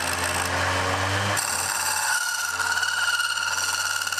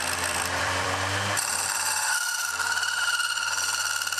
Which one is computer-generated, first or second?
second